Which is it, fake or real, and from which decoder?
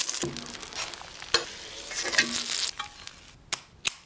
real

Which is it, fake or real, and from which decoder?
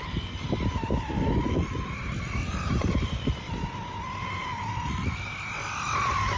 real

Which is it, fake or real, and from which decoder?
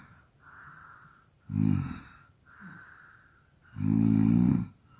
real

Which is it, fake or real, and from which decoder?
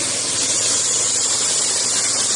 real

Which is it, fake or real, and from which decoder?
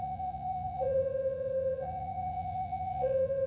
fake, vocoder, Vocos